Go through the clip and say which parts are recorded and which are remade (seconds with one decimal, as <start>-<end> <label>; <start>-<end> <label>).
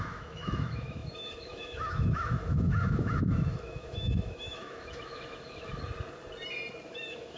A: 0.0-5.7 remade; 5.7-6.8 recorded; 6.8-7.4 remade